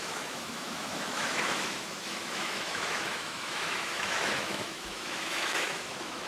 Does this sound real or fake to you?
fake